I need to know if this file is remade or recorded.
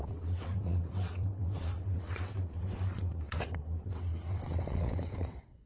remade